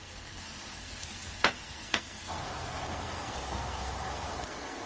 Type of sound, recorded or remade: remade